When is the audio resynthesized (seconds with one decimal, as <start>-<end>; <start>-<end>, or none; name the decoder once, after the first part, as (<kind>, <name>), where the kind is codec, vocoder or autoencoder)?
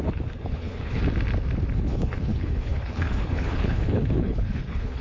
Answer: 0.0-1.0 (codec, HILCodec); 1.7-5.0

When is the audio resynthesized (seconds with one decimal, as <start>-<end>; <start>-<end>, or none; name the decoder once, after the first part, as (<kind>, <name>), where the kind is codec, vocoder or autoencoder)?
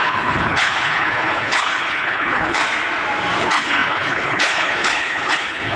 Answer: 0.0-2.6 (codec, HILCodec); 3.4-5.8